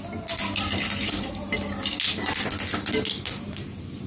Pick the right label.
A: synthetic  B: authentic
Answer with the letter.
B